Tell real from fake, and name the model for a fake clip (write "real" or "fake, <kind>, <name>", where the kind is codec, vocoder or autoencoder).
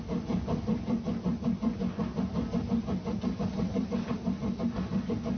real